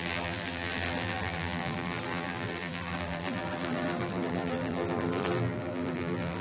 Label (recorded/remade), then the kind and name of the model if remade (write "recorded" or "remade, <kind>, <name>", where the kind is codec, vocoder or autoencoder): remade, vocoder, BigVGAN v2